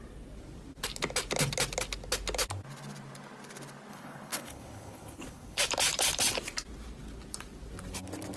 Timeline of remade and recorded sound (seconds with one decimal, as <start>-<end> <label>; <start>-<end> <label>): 0.0-3.9 recorded; 3.9-5.6 remade; 5.6-8.4 recorded